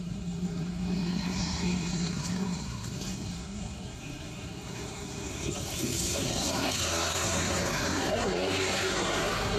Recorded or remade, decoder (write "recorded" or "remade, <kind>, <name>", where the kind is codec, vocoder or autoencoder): remade, codec, SNAC